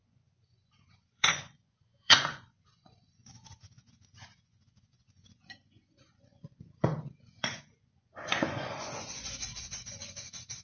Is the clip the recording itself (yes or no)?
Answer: no